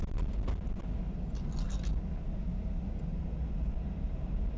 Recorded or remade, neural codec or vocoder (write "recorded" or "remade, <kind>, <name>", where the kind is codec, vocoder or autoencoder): recorded